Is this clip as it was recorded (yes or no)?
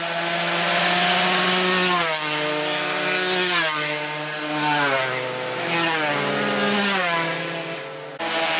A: yes